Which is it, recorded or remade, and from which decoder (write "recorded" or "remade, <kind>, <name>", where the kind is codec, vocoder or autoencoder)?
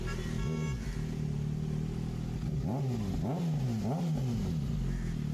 recorded